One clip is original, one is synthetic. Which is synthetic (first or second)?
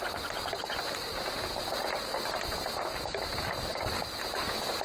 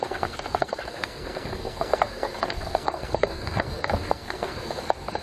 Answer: second